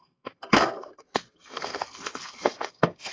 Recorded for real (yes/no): no